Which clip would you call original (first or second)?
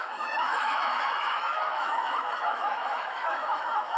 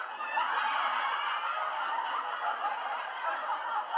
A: second